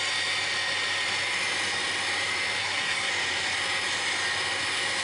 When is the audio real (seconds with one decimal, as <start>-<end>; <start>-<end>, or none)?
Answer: 0.0-2.6; 3.1-5.0